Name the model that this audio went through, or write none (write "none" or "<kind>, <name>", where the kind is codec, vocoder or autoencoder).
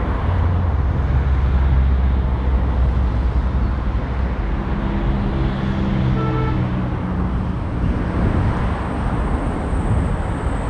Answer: none